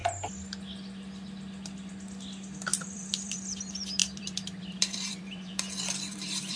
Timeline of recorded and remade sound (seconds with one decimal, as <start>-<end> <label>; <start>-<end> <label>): 0.0-2.8 recorded; 2.8-6.6 remade